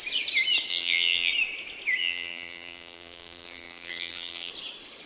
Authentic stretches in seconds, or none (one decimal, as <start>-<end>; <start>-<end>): 0.0-0.7; 1.3-2.0; 4.5-5.1